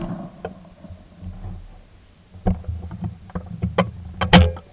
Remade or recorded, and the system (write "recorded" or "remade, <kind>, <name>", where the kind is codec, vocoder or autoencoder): recorded